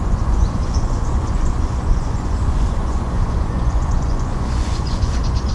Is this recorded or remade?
remade